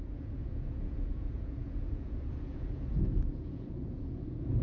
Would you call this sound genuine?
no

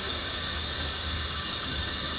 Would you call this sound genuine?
no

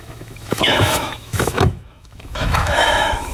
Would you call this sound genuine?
no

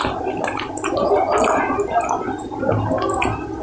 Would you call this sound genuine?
yes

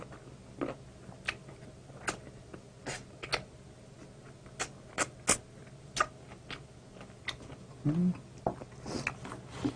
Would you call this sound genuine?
yes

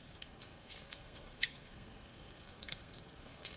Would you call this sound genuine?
no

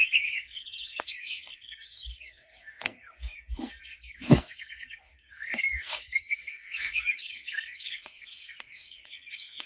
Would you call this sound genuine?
no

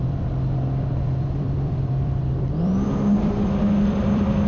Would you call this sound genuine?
no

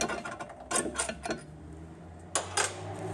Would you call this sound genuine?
yes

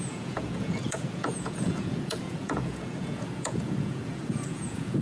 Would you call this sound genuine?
no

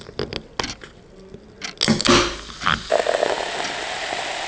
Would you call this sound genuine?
yes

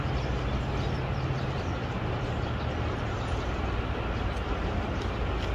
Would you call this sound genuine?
yes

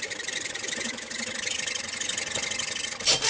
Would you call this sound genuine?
yes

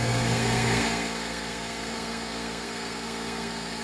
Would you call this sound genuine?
no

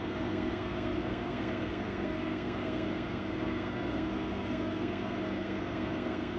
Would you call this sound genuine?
no